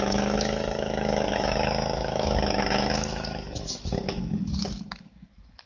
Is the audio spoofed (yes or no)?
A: yes